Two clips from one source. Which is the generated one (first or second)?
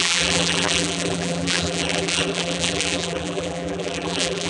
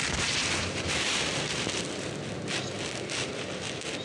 first